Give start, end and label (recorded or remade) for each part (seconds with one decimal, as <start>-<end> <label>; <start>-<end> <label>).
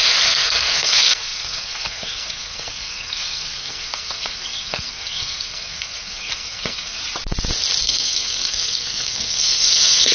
0.0-7.0 remade; 7.0-7.8 recorded; 7.8-10.1 remade